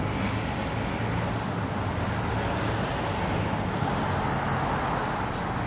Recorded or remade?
recorded